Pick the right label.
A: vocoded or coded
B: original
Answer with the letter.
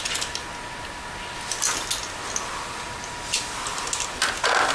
B